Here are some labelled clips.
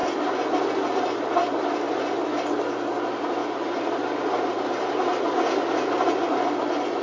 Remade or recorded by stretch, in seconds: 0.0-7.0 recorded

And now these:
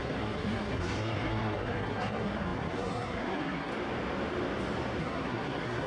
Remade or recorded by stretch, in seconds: 0.0-3.7 remade; 3.7-5.0 recorded; 5.0-5.9 remade

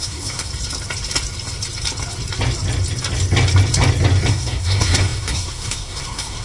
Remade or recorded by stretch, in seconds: 0.0-0.5 remade; 0.5-4.3 recorded; 4.3-6.4 remade

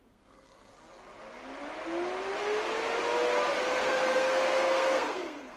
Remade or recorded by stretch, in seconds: 0.0-0.7 remade; 0.7-3.8 recorded; 3.8-5.6 remade

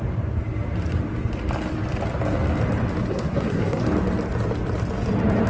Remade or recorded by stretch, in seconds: 0.0-3.1 recorded; 3.1-3.8 remade; 3.8-5.5 recorded

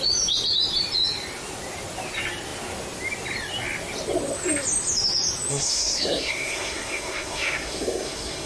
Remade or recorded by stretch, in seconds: 0.0-5.5 recorded; 5.5-8.5 remade

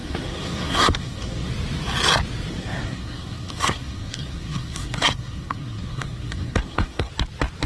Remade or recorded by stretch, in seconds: 0.0-1.5 remade; 1.5-2.5 recorded; 2.5-7.1 remade; 7.1-7.7 recorded